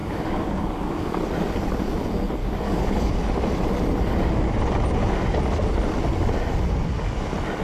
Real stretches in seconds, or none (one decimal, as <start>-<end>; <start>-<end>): 1.2-2.4; 3.1-7.6